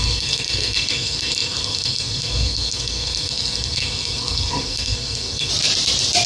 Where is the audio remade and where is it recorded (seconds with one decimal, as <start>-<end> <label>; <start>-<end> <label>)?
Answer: 0.0-5.5 remade; 5.5-6.3 recorded